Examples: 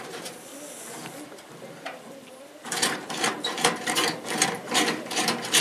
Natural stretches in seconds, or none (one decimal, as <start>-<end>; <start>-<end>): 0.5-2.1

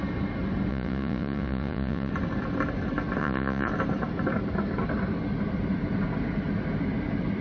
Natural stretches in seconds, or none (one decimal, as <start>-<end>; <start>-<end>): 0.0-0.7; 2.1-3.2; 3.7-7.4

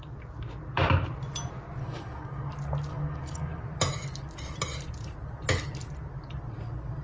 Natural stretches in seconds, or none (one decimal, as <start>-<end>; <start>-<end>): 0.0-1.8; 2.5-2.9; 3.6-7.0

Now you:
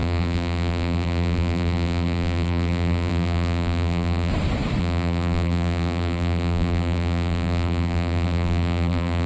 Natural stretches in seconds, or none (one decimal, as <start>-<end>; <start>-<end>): 4.3-4.8